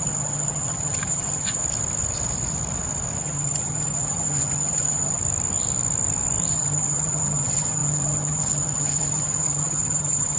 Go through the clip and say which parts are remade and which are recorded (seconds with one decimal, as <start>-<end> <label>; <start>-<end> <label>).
0.0-1.6 remade; 1.6-3.2 recorded; 3.2-5.2 remade; 5.2-6.5 recorded; 6.5-10.4 remade